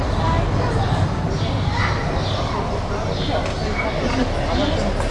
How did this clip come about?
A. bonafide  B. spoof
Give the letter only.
A